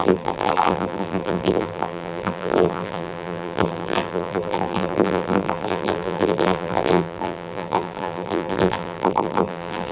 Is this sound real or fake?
fake